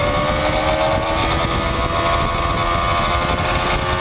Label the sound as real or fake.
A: real